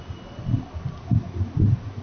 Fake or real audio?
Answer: real